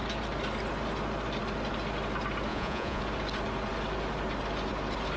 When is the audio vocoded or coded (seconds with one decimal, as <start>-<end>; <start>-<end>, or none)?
2.5-3.0